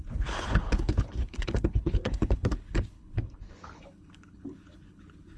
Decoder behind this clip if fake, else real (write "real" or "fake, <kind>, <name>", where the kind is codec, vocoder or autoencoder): fake, codec, HILCodec